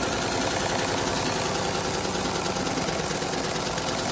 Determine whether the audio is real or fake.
real